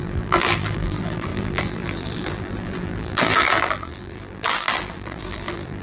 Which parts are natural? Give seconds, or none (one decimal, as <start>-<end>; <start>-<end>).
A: none